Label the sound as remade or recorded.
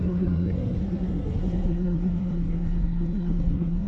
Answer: remade